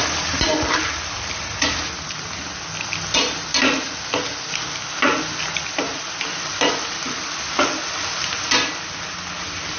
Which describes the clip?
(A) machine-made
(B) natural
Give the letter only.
B